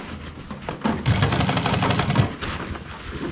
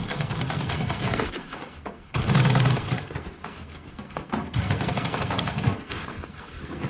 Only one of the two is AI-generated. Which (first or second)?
second